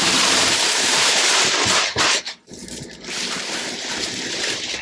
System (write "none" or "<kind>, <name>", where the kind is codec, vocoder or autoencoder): vocoder, BigVGAN v2